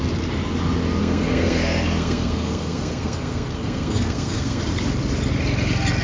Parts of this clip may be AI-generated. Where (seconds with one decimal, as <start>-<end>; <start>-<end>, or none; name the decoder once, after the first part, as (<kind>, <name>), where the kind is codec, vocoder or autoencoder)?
1.0-4.6 (codec, SNAC)